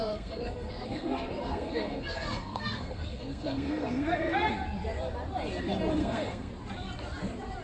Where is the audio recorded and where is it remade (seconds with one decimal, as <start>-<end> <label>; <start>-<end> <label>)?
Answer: 0.0-4.5 remade; 4.5-6.0 recorded; 6.0-6.5 remade; 6.5-7.6 recorded